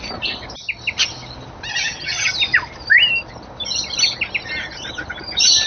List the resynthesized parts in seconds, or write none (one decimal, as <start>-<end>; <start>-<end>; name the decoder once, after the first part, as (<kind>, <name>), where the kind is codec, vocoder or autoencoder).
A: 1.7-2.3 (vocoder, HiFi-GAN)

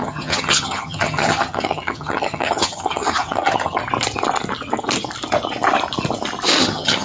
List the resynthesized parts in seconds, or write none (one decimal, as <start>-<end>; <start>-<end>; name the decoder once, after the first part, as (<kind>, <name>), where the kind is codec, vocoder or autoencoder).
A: 0.0-3.8 (vocoder, HiFi-GAN); 6.6-7.0

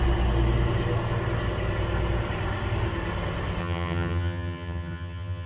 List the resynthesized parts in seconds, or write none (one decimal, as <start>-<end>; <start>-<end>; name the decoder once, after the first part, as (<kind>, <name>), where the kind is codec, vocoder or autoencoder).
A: 3.6-5.5 (vocoder, HiFi-GAN)

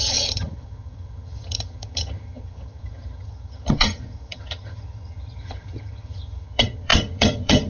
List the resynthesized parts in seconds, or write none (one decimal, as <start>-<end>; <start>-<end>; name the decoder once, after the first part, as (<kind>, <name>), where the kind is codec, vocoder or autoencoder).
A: 0.0-7.7 (vocoder, HiFi-GAN)